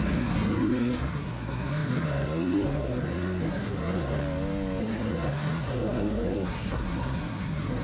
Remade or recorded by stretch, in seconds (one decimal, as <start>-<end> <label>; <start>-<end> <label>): 0.0-4.2 remade; 4.2-4.8 recorded; 4.8-7.8 remade